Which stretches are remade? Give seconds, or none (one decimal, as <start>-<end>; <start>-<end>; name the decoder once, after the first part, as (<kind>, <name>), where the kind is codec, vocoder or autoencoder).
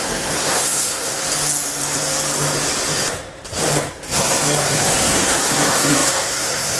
0.0-1.2 (codec, SNAC); 3.9-6.8